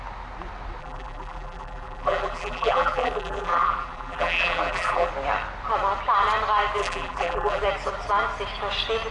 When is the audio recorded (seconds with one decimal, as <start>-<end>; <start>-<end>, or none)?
0.0-0.8; 5.1-6.8; 7.6-9.1